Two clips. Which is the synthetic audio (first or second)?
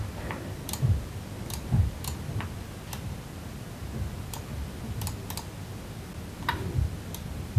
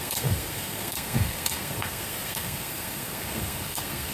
second